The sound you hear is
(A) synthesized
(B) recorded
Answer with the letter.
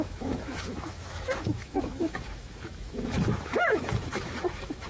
A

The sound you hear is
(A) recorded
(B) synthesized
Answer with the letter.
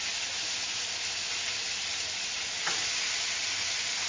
A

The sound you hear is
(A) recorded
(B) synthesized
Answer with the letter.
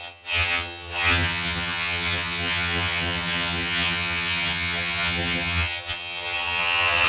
B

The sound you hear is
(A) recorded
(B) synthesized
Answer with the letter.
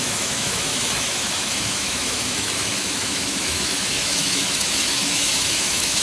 B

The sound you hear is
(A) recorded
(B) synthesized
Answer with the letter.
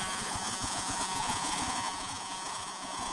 B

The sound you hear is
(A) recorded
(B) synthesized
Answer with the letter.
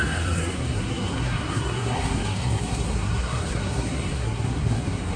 B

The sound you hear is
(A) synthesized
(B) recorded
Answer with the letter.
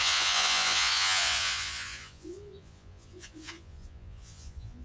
A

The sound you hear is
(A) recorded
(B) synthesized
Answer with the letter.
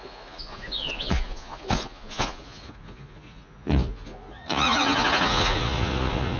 B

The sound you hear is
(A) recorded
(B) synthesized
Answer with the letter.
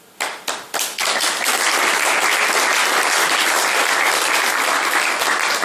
A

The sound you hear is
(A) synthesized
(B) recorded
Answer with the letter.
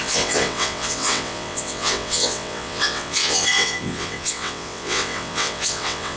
A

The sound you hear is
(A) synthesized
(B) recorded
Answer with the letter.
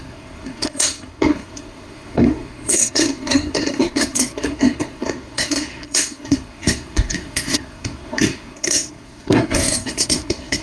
A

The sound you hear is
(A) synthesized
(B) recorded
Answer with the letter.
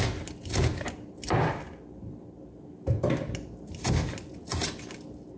B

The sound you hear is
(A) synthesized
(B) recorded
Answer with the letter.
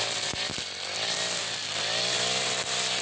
B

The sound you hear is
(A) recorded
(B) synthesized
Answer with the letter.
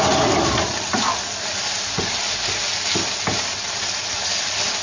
A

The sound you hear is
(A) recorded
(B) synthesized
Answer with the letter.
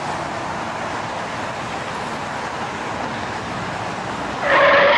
A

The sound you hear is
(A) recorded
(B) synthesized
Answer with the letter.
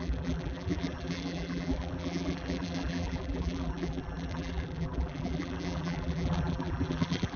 B